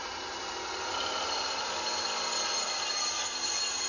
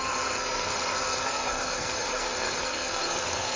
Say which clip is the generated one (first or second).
second